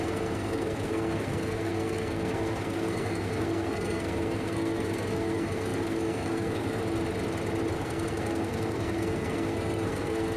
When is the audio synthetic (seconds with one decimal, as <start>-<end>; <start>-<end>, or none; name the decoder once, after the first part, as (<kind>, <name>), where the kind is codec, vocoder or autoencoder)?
0.0-6.8 (codec, SNAC); 7.7-10.4